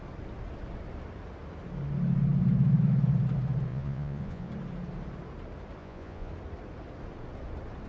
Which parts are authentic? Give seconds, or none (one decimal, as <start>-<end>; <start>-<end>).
0.0-3.7; 4.5-5.8; 6.3-7.9